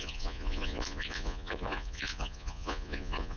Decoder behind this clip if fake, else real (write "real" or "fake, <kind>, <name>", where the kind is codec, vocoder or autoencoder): fake, vocoder, Vocos